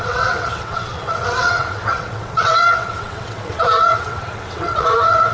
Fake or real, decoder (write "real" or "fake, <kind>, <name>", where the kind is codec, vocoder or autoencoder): fake, vocoder, WaveNeXt